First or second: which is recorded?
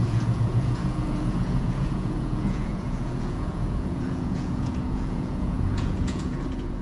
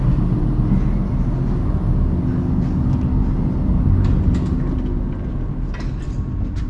second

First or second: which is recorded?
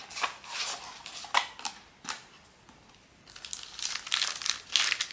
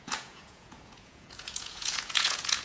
first